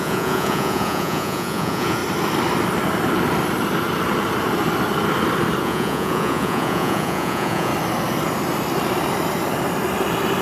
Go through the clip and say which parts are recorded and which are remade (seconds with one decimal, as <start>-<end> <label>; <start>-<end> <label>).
0.0-2.0 remade; 2.0-5.6 recorded; 5.6-7.7 remade; 7.7-10.4 recorded